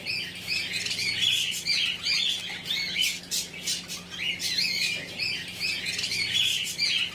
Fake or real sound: real